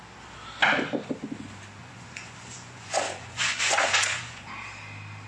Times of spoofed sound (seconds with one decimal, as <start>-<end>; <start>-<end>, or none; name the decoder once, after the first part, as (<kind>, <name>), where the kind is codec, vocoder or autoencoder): 1.8-4.5 (vocoder, Vocos)